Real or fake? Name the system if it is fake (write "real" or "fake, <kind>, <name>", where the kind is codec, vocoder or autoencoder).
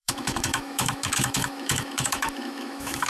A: fake, autoencoder, DAC-VAE